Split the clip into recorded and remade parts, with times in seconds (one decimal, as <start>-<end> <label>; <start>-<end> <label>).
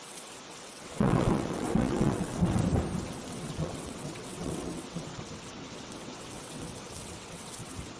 0.0-2.6 remade; 2.6-3.3 recorded; 3.3-8.0 remade